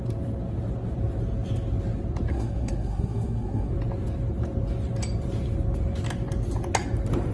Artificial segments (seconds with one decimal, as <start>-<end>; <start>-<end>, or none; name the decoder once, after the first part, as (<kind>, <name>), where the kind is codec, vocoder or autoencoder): 2.3-3.7 (codec, SNAC)